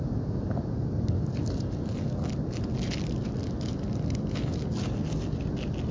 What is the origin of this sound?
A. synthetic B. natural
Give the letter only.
B